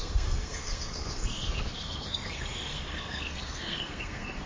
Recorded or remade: remade